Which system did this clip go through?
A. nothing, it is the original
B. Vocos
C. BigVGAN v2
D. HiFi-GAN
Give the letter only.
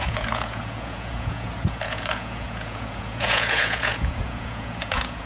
B